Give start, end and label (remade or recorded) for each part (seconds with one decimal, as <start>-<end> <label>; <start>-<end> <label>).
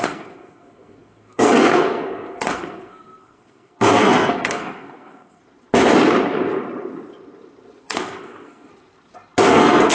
0.0-5.4 remade; 5.4-7.8 recorded; 7.8-8.7 remade; 8.7-9.5 recorded; 9.5-9.9 remade